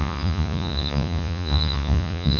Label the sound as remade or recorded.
remade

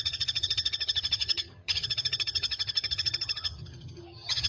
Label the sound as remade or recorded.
remade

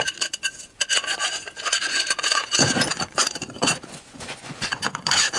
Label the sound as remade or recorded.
remade